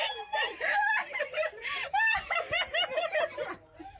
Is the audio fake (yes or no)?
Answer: yes